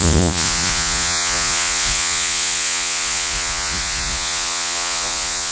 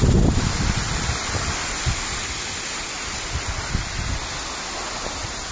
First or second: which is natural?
second